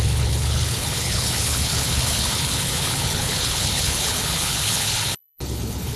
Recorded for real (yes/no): no